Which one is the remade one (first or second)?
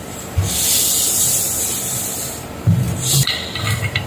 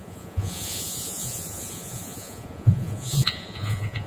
second